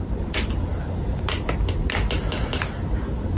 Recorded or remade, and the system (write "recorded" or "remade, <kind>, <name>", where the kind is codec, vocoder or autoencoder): recorded